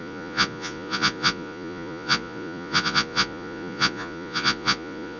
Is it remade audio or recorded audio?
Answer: remade